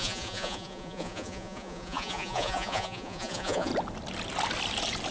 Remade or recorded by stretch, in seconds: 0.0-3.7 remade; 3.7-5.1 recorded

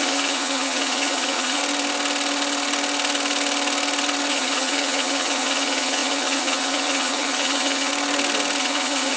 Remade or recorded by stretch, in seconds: 0.0-1.6 remade; 1.6-4.3 recorded; 4.3-7.9 remade; 7.9-8.6 recorded; 8.6-9.2 remade

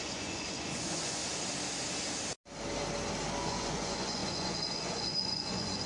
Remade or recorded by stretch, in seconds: 0.0-1.2 remade; 1.2-3.4 recorded; 3.4-5.9 remade

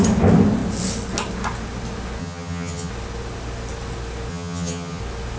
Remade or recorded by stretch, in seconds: 0.0-2.2 recorded; 2.2-2.9 remade; 2.9-4.3 recorded; 4.3-5.0 remade; 5.0-5.4 recorded

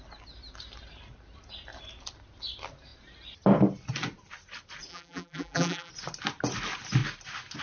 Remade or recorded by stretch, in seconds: 0.0-4.9 recorded; 4.9-5.9 remade; 5.9-7.6 recorded

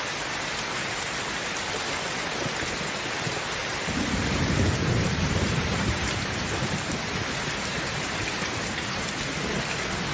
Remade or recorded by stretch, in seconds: 0.0-3.6 recorded; 3.6-6.3 remade; 6.3-7.7 recorded; 7.7-9.0 remade; 9.0-10.1 recorded

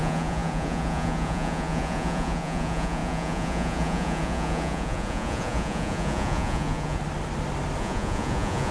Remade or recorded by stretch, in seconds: 0.0-7.0 remade; 7.0-7.8 recorded; 7.8-8.7 remade